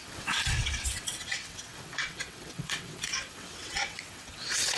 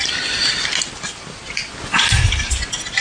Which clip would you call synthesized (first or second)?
first